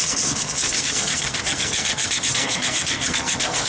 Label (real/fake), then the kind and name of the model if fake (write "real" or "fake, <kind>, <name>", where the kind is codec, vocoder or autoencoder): fake, codec, SNAC